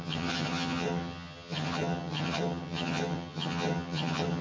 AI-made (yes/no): yes